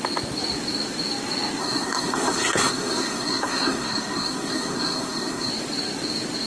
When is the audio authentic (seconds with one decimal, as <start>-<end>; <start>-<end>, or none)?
0.0-1.6; 5.5-6.5